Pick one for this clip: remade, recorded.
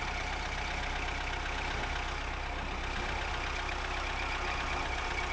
recorded